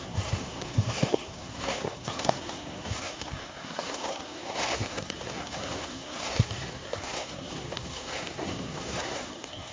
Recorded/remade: remade